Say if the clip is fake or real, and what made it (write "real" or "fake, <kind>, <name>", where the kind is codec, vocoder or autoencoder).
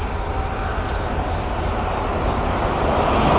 real